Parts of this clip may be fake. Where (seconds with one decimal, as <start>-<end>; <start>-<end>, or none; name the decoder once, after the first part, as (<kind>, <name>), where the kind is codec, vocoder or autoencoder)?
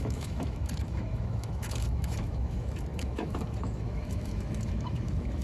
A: 0.0-5.4 (autoencoder, DAC-VAE)